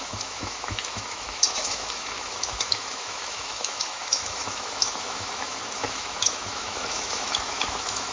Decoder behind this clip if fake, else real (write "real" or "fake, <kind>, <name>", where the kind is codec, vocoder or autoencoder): fake, autoencoder, DAC-VAE